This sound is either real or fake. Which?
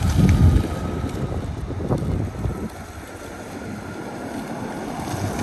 real